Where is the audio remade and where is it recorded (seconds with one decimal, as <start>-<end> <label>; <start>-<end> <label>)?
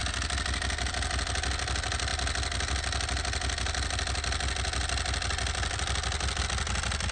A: 0.0-7.1 recorded